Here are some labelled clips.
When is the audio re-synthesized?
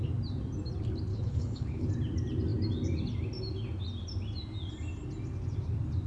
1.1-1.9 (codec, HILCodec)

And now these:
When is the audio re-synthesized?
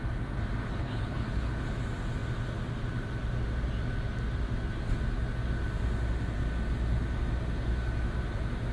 0.6-1.8 (codec, HILCodec)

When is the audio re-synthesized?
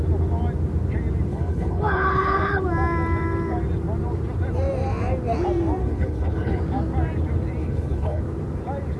1.3-2.6 (codec, HILCodec); 5.8-6.6; 7.6-8.2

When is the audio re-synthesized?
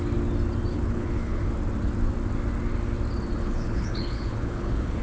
0.7-1.5 (codec, HILCodec); 3.4-5.0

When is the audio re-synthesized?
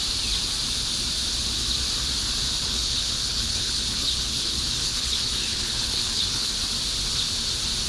2.6-6.5 (codec, HILCodec)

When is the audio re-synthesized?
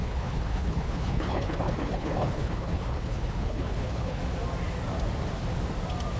0.0-4.2 (codec, HILCodec)